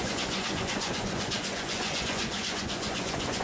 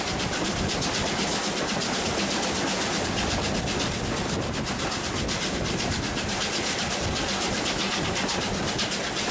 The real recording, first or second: second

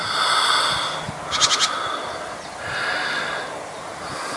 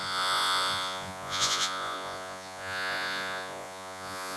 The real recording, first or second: first